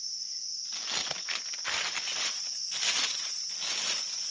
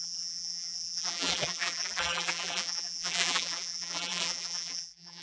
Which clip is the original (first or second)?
first